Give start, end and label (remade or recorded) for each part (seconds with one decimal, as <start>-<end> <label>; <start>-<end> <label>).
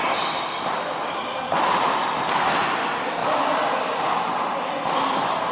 0.0-3.2 recorded; 3.2-4.0 remade; 4.0-5.5 recorded